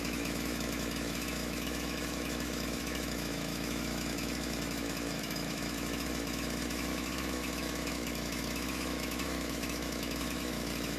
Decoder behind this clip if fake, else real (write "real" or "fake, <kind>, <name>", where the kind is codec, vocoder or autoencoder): fake, autoencoder, DAC-VAE